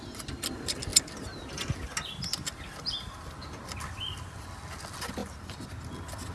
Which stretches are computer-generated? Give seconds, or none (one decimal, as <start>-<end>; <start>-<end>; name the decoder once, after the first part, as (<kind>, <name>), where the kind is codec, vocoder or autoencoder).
none